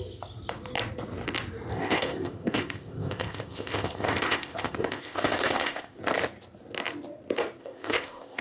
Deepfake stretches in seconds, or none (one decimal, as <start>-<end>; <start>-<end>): 1.7-6.0; 7.6-8.4